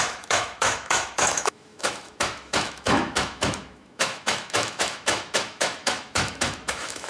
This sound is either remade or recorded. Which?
remade